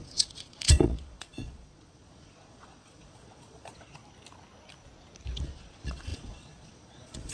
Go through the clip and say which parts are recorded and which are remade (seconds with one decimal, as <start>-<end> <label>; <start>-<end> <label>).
0.0-4.0 remade; 4.0-5.4 recorded; 5.4-7.3 remade